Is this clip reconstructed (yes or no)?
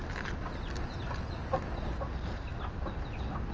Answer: no